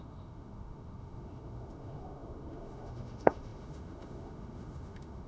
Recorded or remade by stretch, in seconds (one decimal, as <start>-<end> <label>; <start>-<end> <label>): 0.0-5.3 remade